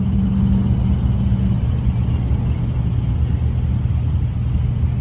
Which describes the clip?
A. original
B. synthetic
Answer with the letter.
A